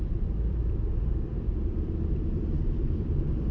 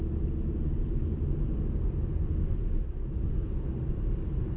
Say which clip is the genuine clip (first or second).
second